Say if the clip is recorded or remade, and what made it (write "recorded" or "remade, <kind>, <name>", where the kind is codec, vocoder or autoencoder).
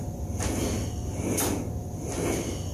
recorded